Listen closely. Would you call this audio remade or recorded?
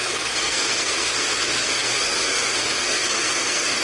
remade